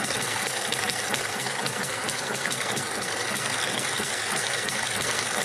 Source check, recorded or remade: remade